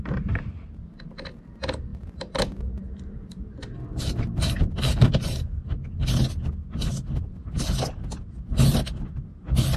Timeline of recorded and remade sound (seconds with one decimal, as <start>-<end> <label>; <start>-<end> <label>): 0.0-1.9 recorded; 1.9-6.1 remade; 6.1-9.8 recorded

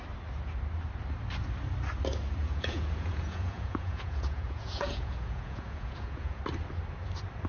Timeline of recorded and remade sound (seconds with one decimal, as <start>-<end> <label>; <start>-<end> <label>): 0.0-2.4 recorded; 2.4-6.4 remade; 6.4-7.5 recorded

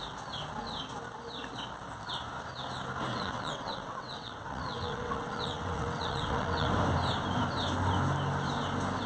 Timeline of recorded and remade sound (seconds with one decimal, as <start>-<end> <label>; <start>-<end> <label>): 0.0-3.1 recorded; 3.1-6.7 remade; 6.7-9.1 recorded

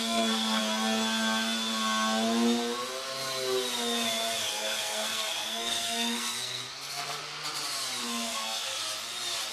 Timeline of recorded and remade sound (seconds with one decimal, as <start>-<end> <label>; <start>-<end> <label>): 0.0-0.6 remade; 0.6-4.5 recorded; 4.5-7.2 remade; 7.2-8.0 recorded; 8.0-8.7 remade; 8.7-9.5 recorded